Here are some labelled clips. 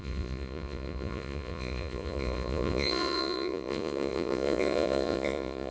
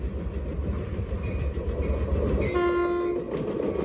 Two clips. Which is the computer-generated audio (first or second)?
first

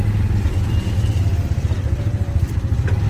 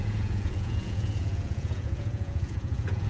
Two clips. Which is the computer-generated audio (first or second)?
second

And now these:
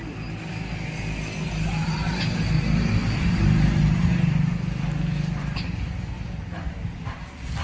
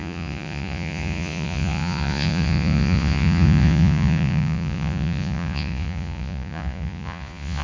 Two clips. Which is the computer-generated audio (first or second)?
second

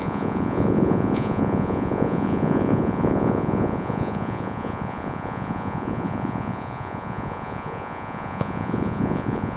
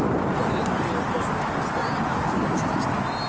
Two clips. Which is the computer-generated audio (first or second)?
first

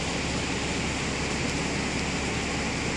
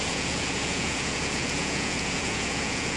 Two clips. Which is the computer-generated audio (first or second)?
second